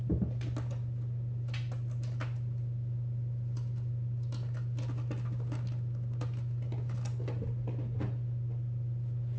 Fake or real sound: real